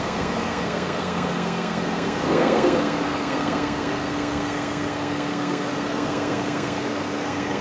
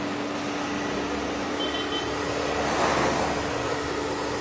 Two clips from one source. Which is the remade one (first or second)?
first